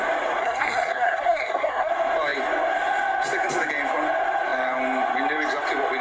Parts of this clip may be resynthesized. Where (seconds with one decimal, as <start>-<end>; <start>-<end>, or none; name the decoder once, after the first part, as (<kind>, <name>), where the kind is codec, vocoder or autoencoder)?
0.4-1.9 (codec, SNAC)